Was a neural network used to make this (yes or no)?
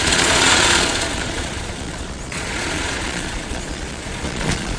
yes